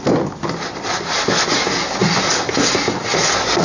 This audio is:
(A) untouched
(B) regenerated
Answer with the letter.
A